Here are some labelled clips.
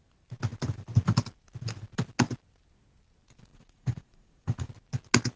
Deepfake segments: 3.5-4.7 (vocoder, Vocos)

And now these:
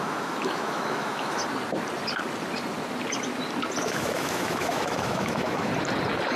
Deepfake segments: 0.0-1.4 (autoencoder, DAC-VAE); 3.8-5.7

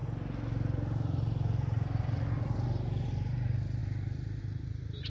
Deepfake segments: none

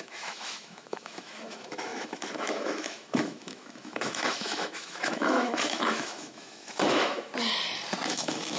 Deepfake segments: 0.0-7.3 (autoencoder, DAC-VAE); 8.1-8.6

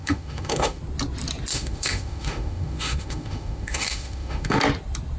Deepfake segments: 0.0-0.8 (autoencoder, DAC-VAE); 1.5-4.6

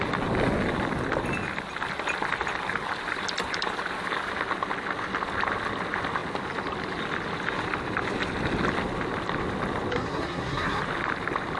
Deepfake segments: 9.9-10.8 (codec, SNAC)